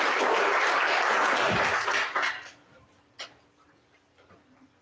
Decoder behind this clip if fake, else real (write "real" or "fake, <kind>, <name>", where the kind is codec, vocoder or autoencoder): real